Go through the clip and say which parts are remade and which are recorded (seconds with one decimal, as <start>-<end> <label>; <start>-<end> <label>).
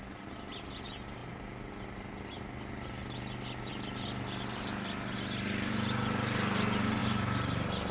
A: 0.0-7.9 recorded